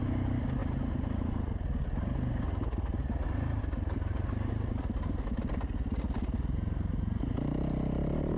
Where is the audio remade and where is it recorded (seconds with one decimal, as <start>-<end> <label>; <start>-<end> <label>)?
0.0-8.4 recorded